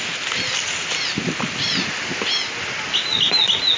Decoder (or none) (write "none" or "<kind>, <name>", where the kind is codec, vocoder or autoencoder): none